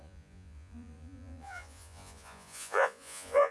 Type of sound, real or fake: fake